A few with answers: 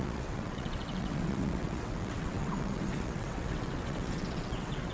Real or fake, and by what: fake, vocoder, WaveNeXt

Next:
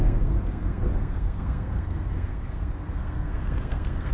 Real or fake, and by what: fake, codec, SNAC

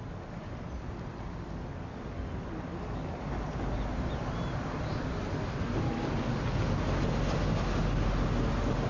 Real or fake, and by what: real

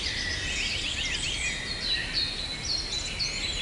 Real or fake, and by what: real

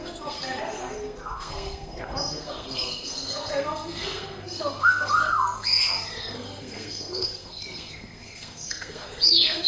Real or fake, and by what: fake, codec, SNAC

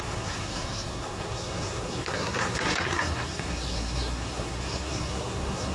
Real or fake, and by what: fake, codec, SNAC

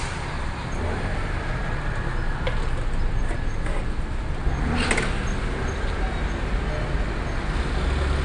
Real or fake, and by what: real